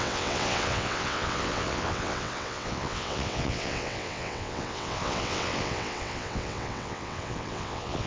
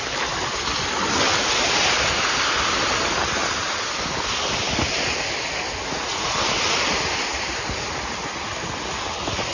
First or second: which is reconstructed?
first